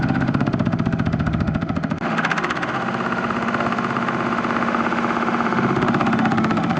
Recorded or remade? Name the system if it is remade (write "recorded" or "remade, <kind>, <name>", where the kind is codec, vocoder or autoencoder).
remade, autoencoder, DAC-VAE